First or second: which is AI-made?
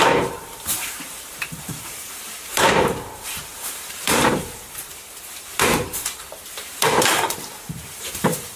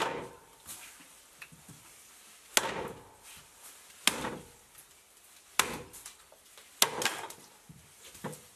first